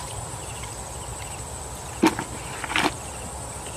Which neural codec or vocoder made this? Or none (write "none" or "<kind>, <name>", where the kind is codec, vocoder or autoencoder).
none